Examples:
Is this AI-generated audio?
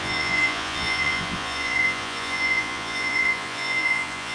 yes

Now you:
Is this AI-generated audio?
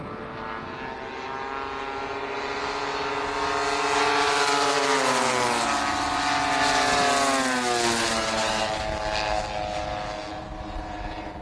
no